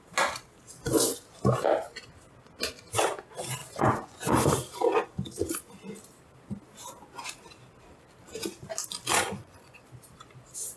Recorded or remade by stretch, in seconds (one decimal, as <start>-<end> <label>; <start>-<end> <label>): 0.0-3.6 recorded; 3.6-4.3 remade; 4.3-9.1 recorded; 9.1-9.8 remade; 9.8-10.8 recorded

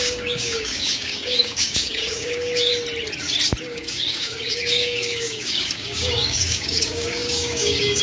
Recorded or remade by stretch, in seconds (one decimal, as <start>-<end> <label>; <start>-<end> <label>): 0.0-2.7 remade; 2.7-3.6 recorded; 3.6-8.0 remade

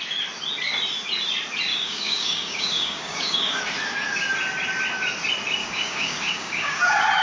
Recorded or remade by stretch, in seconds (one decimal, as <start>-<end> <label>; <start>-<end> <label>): 0.0-1.7 recorded; 1.7-3.6 remade; 3.6-5.6 recorded; 5.6-6.8 remade; 6.8-7.2 recorded

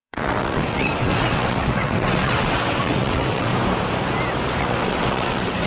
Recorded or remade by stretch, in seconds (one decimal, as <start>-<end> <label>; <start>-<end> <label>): 0.0-3.5 remade; 3.5-4.6 recorded; 4.6-5.7 remade

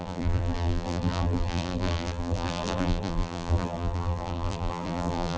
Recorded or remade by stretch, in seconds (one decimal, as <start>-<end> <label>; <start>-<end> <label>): 0.0-5.4 remade

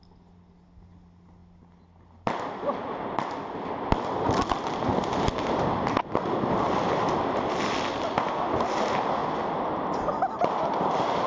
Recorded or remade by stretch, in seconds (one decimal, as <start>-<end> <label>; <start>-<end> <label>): 0.0-11.3 recorded

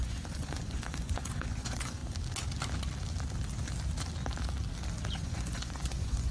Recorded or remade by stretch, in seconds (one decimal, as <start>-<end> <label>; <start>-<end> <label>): 0.0-2.0 remade; 2.0-5.1 recorded; 5.1-6.3 remade